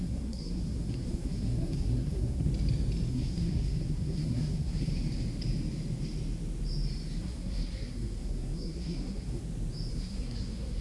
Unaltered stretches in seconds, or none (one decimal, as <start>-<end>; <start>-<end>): 2.5-3.1; 4.9-7.2; 9.4-9.9